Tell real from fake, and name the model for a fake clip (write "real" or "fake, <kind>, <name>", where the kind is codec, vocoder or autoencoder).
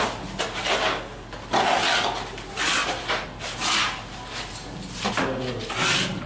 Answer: real